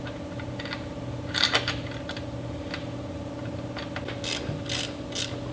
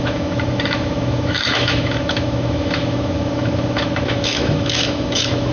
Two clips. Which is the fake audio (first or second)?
second